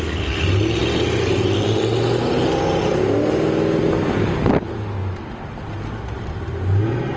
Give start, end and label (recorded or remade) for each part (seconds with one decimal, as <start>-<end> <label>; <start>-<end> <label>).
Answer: 0.0-7.2 recorded